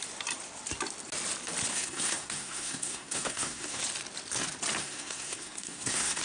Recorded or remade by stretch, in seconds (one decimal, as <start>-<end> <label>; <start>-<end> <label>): 0.0-1.7 recorded; 1.7-3.8 remade; 3.8-4.8 recorded; 4.8-6.2 remade